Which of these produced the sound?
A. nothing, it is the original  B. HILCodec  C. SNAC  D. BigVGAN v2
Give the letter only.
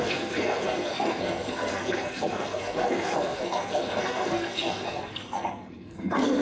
C